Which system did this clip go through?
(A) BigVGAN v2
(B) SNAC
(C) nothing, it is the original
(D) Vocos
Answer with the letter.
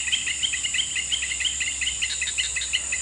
C